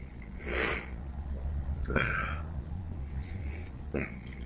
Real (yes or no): no